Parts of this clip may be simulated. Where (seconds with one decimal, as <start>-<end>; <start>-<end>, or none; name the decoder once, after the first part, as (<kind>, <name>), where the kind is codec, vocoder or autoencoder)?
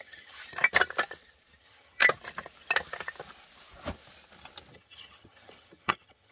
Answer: 0.0-0.4 (vocoder, HiFi-GAN); 1.6-2.0; 4.7-6.3